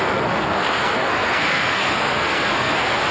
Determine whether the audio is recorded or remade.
remade